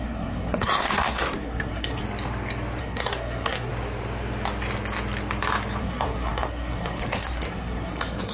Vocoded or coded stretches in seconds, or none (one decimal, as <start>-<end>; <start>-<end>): 0.0-2.0; 2.8-3.7; 5.8-8.3